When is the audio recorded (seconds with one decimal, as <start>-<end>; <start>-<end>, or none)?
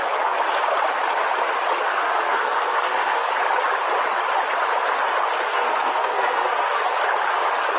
0.0-1.9; 3.3-5.5; 6.8-7.8